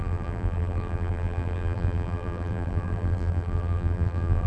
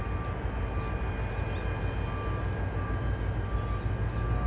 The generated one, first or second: first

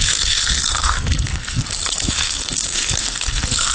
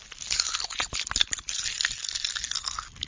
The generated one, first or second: first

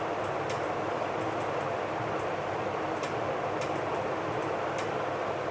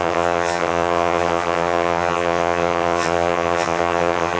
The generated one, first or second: second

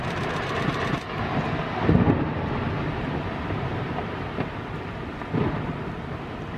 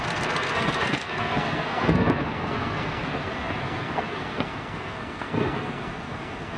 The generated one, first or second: second